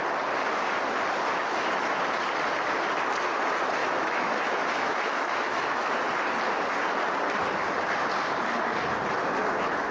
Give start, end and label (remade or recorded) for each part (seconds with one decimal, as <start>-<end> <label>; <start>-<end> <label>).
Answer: 0.0-1.3 recorded; 1.3-2.0 remade; 2.0-3.8 recorded; 3.8-6.1 remade; 6.1-9.9 recorded